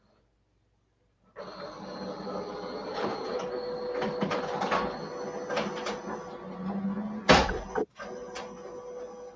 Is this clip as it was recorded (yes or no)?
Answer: yes